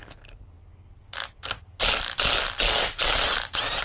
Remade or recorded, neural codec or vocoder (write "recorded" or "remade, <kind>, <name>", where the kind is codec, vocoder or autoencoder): recorded